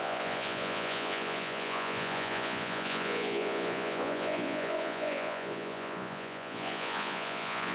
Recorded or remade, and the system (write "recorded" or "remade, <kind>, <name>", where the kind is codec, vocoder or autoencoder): remade, vocoder, Vocos